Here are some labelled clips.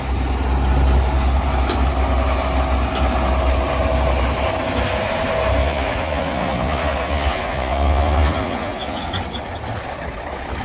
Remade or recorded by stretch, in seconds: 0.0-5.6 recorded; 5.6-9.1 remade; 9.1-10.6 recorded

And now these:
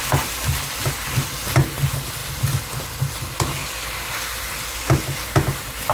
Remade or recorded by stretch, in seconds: 0.0-5.9 recorded

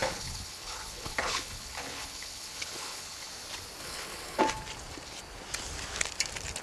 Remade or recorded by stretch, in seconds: 0.0-3.3 remade; 3.3-3.8 recorded; 3.8-4.4 remade; 4.4-6.6 recorded